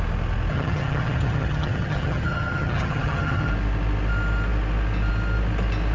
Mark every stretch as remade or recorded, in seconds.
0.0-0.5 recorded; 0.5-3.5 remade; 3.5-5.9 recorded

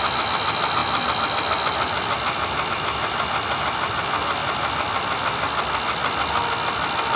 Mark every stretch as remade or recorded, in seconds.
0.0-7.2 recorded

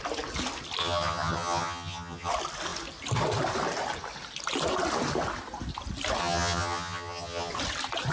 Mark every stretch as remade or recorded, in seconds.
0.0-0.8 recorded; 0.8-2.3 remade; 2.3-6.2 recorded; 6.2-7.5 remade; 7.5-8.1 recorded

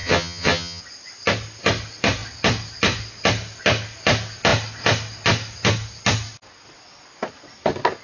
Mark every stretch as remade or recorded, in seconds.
0.0-0.8 remade; 0.8-8.0 recorded